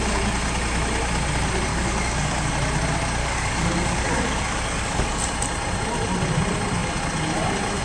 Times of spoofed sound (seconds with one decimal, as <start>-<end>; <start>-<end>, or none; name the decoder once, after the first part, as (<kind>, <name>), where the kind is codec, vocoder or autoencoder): 1.7-2.5 (codec, DAC); 3.2-5.2